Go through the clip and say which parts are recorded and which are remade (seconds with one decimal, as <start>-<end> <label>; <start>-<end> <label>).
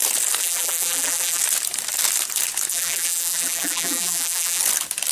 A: 0.0-0.4 recorded; 0.4-1.4 remade; 1.4-2.7 recorded; 2.7-4.6 remade; 4.6-5.1 recorded